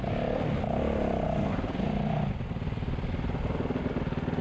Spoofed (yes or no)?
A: no